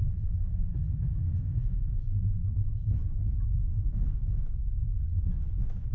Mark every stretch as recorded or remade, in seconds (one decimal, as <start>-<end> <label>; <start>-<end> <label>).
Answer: 0.0-4.9 remade; 4.9-5.5 recorded; 5.5-5.9 remade